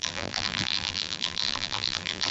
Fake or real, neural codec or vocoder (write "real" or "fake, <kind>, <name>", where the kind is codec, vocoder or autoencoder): fake, vocoder, BigVGAN v2